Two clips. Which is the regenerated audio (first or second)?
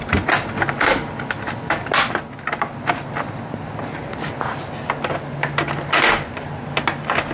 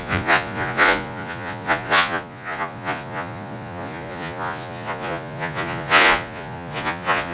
second